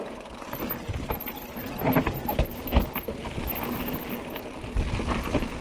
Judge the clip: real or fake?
real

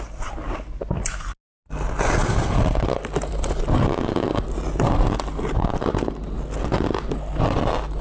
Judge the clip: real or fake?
real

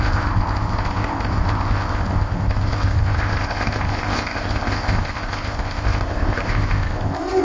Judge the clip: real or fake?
fake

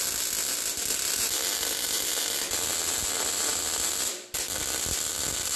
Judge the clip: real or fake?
real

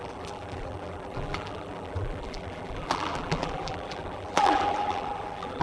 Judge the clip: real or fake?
fake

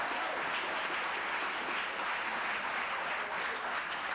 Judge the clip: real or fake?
real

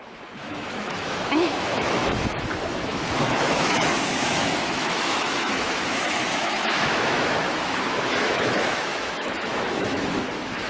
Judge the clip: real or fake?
fake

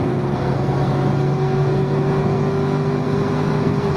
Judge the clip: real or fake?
fake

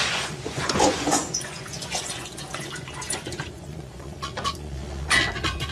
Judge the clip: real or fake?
fake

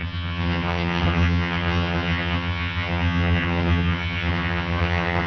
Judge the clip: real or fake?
fake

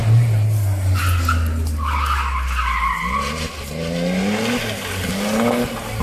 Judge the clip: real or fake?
real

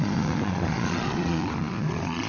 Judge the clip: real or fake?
fake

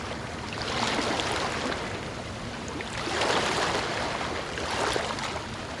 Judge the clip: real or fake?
real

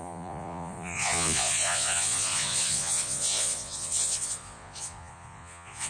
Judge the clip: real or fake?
fake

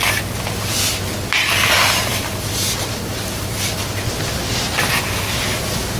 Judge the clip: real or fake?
real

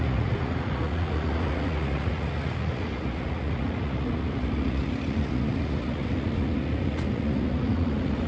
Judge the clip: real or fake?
fake